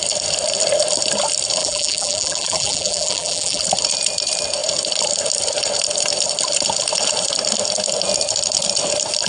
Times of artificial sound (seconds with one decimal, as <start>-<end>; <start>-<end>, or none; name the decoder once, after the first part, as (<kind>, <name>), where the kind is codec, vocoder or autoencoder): 1.6-3.6 (vocoder, BigVGAN v2)